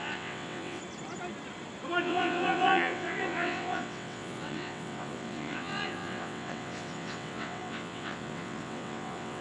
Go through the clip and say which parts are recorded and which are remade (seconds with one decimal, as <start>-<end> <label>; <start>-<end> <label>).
0.0-0.8 remade; 0.8-2.0 recorded; 2.0-9.4 remade